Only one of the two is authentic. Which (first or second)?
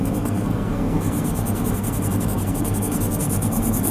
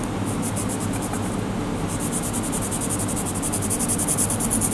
second